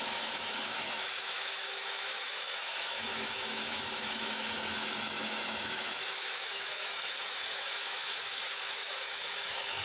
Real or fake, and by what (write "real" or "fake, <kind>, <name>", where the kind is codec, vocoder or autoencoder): fake, autoencoder, DAC-VAE